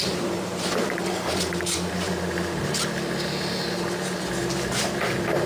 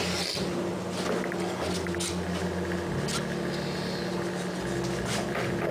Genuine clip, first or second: second